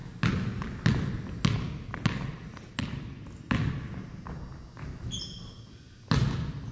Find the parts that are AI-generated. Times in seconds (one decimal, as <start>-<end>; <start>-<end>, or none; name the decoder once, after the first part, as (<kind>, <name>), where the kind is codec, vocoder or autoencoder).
none